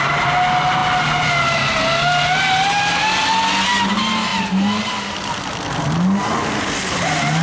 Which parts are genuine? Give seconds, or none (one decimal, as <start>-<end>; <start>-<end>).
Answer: 0.0-7.4